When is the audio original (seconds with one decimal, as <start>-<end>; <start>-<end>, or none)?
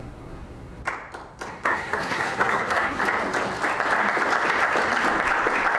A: 0.8-1.5; 3.0-5.8